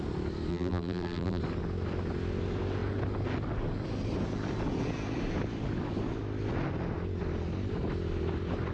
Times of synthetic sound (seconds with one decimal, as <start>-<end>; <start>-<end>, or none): 0.5-1.4

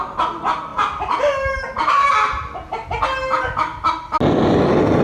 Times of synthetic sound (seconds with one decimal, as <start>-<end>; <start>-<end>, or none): 0.7-2.4

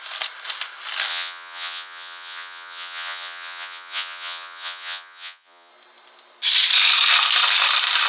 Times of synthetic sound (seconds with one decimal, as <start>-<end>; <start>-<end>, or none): 1.1-5.7